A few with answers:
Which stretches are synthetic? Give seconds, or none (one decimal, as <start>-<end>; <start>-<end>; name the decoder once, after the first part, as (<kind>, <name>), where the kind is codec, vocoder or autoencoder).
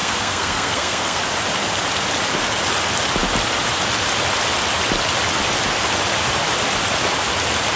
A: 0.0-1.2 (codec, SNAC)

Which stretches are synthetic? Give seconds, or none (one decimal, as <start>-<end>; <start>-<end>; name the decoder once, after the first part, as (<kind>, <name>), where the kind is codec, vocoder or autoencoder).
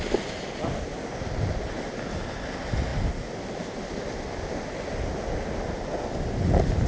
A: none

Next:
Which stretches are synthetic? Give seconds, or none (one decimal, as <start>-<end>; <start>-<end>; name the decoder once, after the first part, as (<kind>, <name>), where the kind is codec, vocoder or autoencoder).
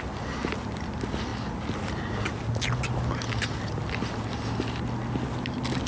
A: none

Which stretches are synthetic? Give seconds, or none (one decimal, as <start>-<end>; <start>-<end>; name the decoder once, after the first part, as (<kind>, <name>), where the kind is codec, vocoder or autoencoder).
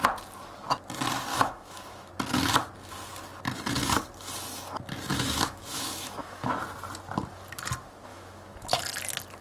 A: 1.3-2.1 (autoencoder, DAC-VAE); 5.1-6.6; 8.1-8.8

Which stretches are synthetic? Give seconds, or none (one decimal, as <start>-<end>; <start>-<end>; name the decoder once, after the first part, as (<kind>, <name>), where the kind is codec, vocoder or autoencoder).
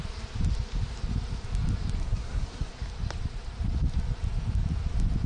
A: 2.0-2.7 (codec, SNAC)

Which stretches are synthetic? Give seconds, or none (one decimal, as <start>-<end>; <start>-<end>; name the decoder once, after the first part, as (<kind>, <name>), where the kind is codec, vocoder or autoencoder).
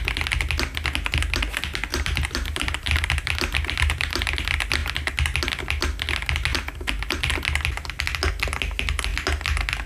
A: 1.9-4.3 (vocoder, BigVGAN v2)